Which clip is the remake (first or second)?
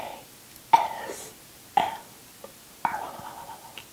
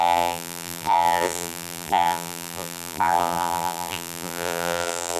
second